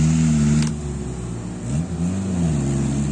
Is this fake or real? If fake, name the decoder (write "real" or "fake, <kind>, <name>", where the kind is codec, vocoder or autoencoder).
real